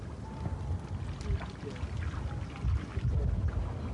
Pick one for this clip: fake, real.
real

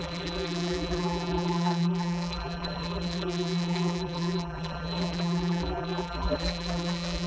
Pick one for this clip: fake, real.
fake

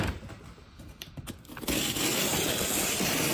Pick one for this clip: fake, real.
fake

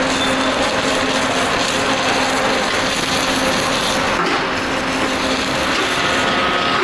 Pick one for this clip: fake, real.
real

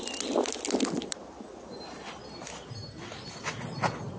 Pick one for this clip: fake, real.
real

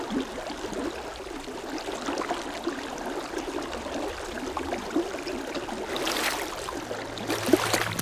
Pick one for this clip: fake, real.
real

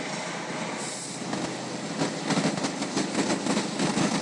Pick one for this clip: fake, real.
real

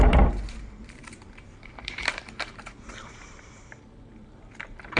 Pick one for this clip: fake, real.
fake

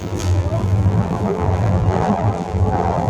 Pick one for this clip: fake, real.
fake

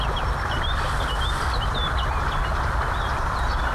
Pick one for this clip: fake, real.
real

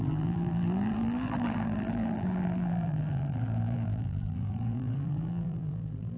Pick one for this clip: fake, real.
fake